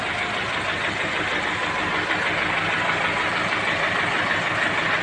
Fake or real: real